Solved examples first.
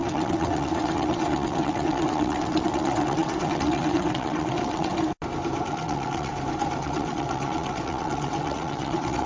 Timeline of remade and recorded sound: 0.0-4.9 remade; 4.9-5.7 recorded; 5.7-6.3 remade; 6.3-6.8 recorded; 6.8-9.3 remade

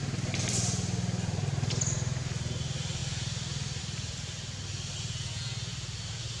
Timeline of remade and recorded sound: 0.0-6.4 recorded

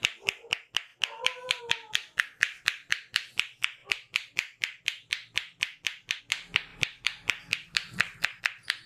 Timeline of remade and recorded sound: 0.0-3.8 recorded; 3.8-6.2 remade; 6.2-6.7 recorded; 6.7-8.4 remade; 8.4-8.9 recorded

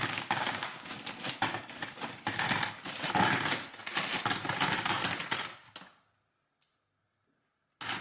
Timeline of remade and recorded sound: 0.0-0.9 remade; 0.9-8.0 recorded

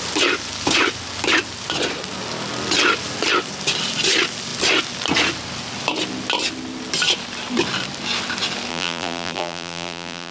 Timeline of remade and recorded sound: 0.0-8.7 recorded; 8.7-10.3 remade